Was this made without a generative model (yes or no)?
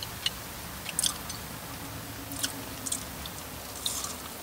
yes